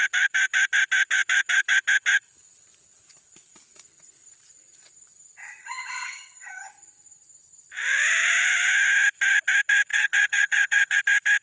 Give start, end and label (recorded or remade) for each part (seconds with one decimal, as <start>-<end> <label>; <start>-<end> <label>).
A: 0.0-5.6 recorded; 5.6-6.7 remade; 6.7-9.9 recorded; 9.9-11.0 remade; 11.0-11.4 recorded